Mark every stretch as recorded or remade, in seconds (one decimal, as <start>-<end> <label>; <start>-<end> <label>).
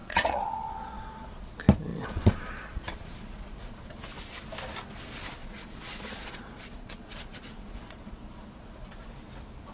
0.0-1.5 remade; 1.5-1.9 recorded; 1.9-4.0 remade; 4.0-5.4 recorded; 5.4-9.1 remade; 9.1-9.7 recorded